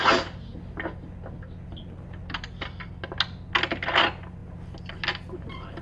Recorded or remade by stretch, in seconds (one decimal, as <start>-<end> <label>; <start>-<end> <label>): 0.0-5.8 recorded